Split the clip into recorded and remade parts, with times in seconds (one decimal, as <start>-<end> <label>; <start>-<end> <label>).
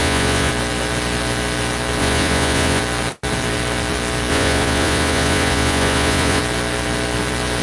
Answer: 0.0-0.5 remade; 0.5-2.0 recorded; 2.0-2.8 remade; 2.8-4.3 recorded; 4.3-6.4 remade; 6.4-7.6 recorded